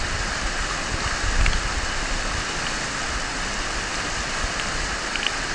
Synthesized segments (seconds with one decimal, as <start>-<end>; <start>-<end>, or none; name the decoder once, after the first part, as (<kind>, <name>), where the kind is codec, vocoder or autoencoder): none